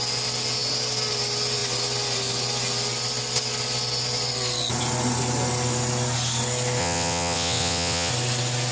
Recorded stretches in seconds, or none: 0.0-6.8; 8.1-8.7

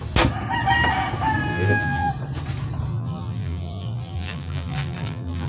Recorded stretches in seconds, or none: 0.0-1.5; 2.1-2.9

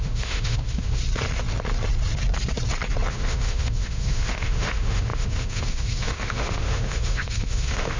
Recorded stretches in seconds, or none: 1.0-3.1

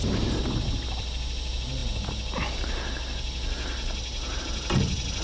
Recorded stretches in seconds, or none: 0.0-5.2

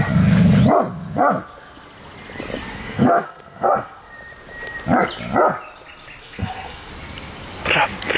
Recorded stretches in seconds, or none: 0.0-2.7; 4.1-6.2; 6.9-8.2